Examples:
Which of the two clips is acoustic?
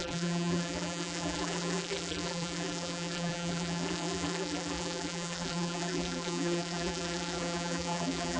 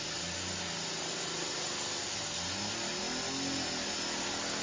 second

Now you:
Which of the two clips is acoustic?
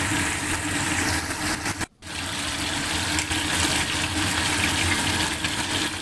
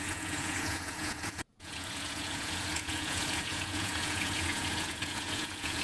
first